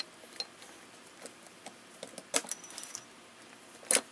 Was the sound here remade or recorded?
recorded